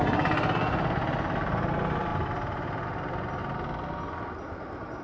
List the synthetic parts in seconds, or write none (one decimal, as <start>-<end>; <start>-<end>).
none